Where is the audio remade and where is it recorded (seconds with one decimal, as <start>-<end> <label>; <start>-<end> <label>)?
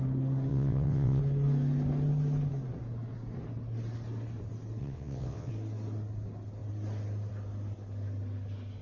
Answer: 0.0-0.5 recorded; 0.5-1.2 remade; 1.2-4.8 recorded; 4.8-5.5 remade; 5.5-8.8 recorded